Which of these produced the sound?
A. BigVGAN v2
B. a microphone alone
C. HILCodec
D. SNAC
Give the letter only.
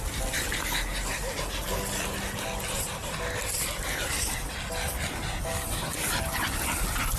B